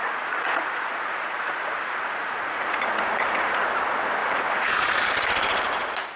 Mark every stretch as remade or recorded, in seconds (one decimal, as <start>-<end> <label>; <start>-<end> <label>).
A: 0.0-3.7 remade; 3.7-4.2 recorded; 4.2-5.1 remade; 5.1-6.2 recorded